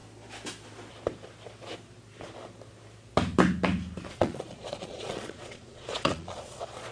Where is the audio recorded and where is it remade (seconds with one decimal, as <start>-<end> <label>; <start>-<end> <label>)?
0.0-4.1 recorded; 4.1-6.9 remade